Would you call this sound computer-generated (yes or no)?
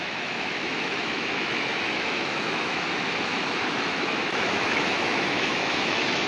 yes